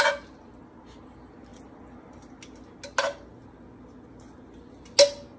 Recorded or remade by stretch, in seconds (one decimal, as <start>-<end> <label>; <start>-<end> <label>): 0.0-5.4 recorded